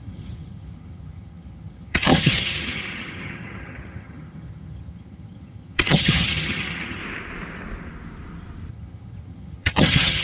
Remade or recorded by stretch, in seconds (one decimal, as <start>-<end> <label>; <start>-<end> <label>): 0.0-7.0 remade; 7.0-8.7 recorded; 8.7-10.2 remade